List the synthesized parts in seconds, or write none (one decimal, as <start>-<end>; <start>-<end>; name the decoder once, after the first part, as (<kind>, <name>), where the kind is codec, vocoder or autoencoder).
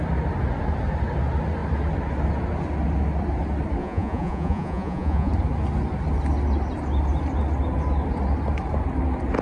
3.8-5.3 (vocoder, Vocos)